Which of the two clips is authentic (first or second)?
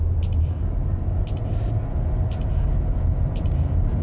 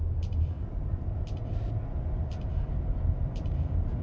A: first